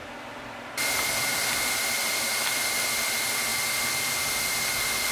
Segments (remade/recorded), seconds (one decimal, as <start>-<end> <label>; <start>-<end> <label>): 0.0-3.1 remade; 3.1-5.1 recorded